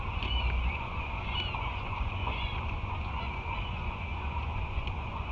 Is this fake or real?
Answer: fake